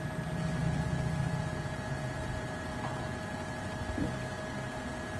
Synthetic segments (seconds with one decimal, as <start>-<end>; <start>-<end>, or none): 0.6-3.7